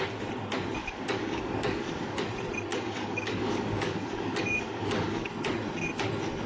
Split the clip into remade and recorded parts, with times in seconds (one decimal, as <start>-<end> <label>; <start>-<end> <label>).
0.0-0.8 recorded; 0.8-2.2 remade; 2.2-2.7 recorded; 2.7-5.3 remade; 5.3-6.5 recorded